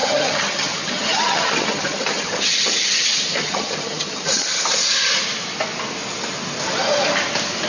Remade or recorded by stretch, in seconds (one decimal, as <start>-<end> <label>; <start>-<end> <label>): 0.0-4.6 remade; 4.6-7.7 recorded